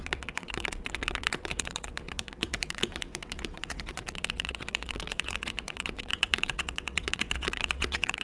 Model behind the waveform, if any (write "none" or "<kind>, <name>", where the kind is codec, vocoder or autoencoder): vocoder, WaveNeXt